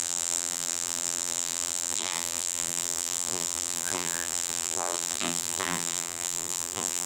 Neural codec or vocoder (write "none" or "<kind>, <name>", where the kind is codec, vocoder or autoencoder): vocoder, BigVGAN v2